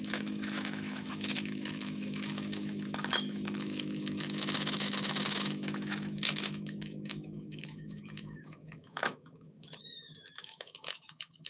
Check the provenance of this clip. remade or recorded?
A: remade